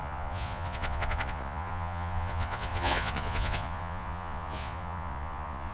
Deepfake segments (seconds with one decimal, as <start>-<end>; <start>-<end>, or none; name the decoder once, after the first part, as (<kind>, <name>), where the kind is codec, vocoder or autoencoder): 0.0-5.7 (vocoder, Vocos)